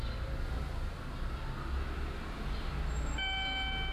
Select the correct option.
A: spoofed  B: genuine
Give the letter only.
B